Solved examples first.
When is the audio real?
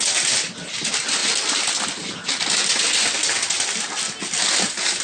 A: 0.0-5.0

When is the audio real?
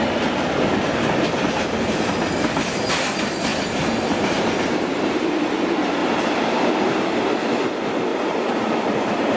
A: 0.0-3.5; 5.3-6.0; 7.0-8.1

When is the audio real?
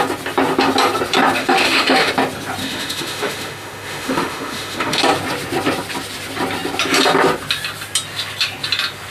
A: 0.0-1.4; 2.1-2.6; 5.0-9.1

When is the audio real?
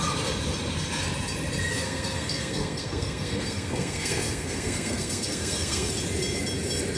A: 0.0-1.7; 5.9-7.0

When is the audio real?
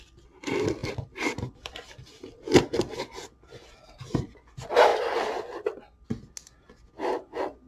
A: 0.0-0.8; 1.7-7.7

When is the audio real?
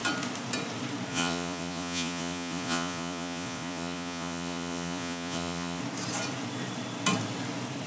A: 0.0-1.1; 5.8-7.9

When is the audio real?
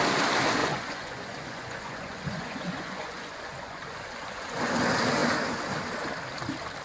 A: 0.0-0.6; 4.7-6.8